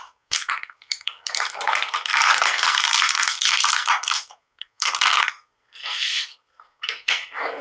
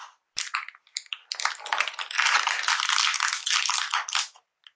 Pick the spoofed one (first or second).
first